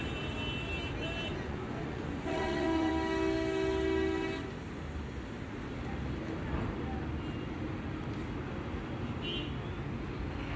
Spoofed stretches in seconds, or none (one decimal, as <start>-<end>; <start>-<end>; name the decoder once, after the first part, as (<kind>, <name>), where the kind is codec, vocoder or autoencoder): 1.3-2.9 (vocoder, Vocos)

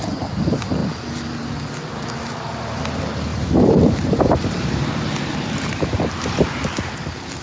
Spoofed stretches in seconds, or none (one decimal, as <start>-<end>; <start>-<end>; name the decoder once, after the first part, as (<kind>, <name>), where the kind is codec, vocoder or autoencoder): 3.3-6.4 (vocoder, BigVGAN v2)

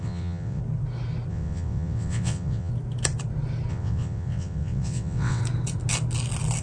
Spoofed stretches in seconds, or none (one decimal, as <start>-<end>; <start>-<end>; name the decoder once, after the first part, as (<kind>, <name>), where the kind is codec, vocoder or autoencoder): 0.0-0.6 (vocoder, WaveNeXt); 1.3-2.7; 3.7-5.4

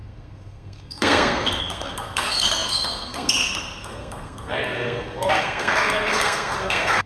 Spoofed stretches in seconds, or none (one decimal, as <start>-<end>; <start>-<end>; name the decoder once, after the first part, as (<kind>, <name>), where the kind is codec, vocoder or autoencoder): 0.0-7.1 (codec, SNAC)